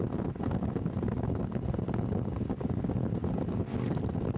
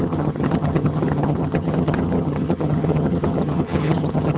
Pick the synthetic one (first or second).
second